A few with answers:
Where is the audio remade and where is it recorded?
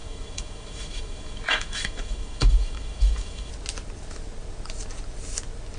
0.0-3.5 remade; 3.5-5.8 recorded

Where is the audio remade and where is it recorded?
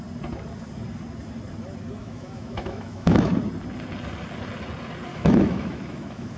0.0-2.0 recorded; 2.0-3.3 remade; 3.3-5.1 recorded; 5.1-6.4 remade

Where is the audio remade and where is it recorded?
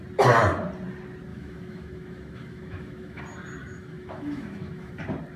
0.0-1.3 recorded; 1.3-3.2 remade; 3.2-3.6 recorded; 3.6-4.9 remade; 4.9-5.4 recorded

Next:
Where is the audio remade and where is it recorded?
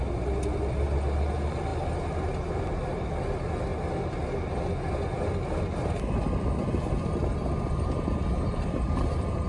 0.0-9.5 recorded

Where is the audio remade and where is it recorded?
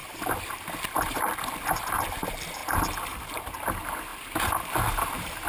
0.0-5.5 recorded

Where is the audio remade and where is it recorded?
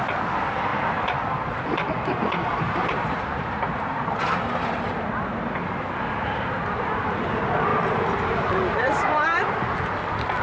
0.0-0.7 recorded; 0.7-5.5 remade; 5.5-7.7 recorded; 7.7-9.5 remade; 9.5-10.4 recorded